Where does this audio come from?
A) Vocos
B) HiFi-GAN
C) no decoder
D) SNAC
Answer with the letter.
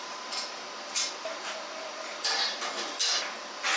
C